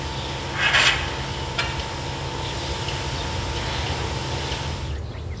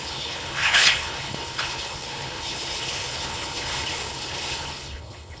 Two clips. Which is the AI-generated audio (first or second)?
second